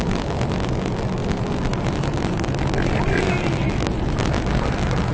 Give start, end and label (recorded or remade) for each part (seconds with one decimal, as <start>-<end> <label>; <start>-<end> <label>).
0.0-5.1 recorded